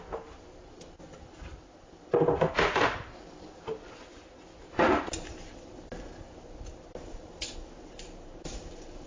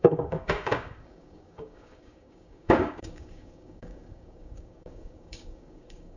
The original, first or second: first